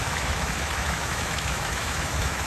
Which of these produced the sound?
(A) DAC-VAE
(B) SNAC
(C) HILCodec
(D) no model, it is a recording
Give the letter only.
A